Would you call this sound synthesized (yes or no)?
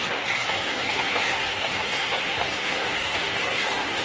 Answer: yes